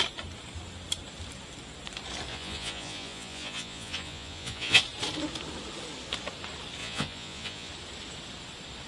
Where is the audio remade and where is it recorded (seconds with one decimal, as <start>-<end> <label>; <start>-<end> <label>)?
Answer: 0.0-2.3 recorded; 2.3-4.8 remade; 4.8-6.8 recorded; 6.8-7.7 remade; 7.7-8.9 recorded